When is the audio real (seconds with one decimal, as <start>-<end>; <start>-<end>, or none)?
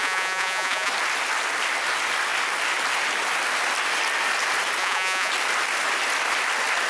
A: 0.9-4.8; 5.3-6.9